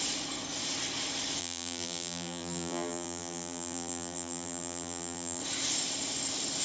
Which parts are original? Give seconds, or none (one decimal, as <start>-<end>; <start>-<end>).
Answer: 0.0-1.4; 5.4-6.6